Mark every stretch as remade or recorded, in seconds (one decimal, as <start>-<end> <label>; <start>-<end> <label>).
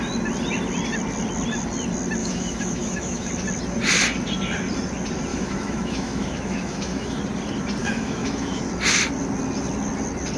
0.0-2.2 recorded; 2.2-3.3 remade; 3.3-5.3 recorded; 5.3-7.2 remade; 7.2-7.8 recorded; 7.8-8.6 remade; 8.6-10.4 recorded